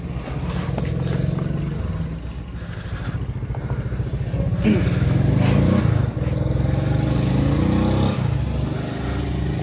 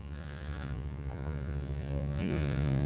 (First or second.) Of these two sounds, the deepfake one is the second